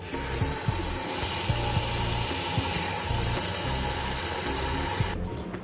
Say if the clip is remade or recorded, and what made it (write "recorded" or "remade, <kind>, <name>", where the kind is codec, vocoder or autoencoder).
recorded